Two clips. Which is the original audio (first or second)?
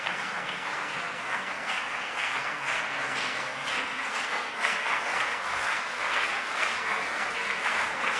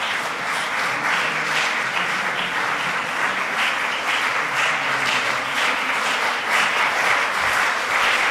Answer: second